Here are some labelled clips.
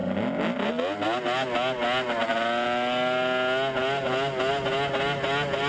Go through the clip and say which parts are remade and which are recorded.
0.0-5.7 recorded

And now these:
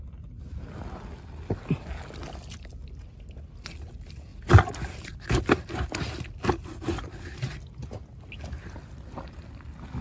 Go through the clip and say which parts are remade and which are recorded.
0.0-10.0 recorded

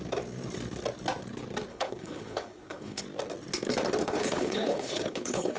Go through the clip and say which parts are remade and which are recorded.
0.0-1.7 recorded; 1.7-3.0 remade; 3.0-4.0 recorded; 4.0-5.6 remade

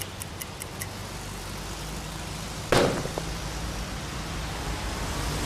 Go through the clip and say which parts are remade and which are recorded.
0.0-1.0 recorded; 1.0-2.6 remade; 2.6-5.5 recorded

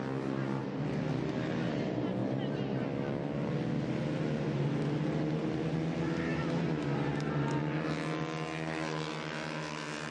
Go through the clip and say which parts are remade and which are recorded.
0.0-10.1 recorded

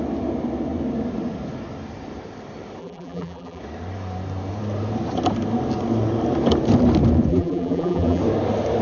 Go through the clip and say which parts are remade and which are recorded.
0.0-2.8 recorded; 2.8-3.6 remade; 3.6-7.3 recorded; 7.3-8.2 remade; 8.2-8.8 recorded

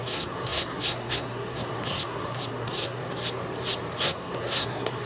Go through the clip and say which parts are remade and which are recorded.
0.0-3.0 remade; 3.0-4.0 recorded; 4.0-5.1 remade